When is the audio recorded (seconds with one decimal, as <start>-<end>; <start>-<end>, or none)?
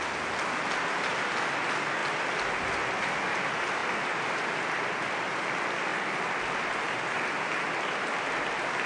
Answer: 0.0-8.9